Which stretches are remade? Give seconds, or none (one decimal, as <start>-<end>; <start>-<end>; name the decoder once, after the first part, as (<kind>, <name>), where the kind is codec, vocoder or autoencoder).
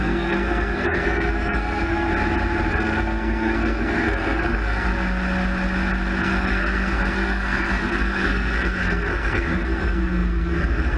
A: 0.0-2.1 (codec, SNAC); 2.7-4.9; 6.2-11.0